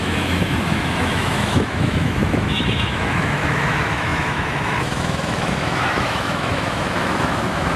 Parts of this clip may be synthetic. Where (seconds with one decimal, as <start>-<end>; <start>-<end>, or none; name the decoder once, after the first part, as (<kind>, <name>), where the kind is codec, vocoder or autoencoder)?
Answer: 0.0-7.8 (autoencoder, DAC-VAE)